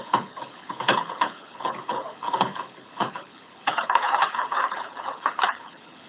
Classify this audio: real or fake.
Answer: fake